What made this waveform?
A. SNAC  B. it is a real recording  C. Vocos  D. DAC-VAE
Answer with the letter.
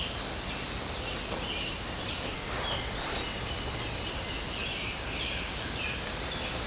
B